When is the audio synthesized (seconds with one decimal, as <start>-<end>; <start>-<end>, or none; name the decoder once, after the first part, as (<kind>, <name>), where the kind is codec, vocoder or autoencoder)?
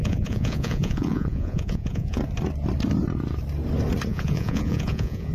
0.0-2.2 (vocoder, Vocos); 4.1-5.3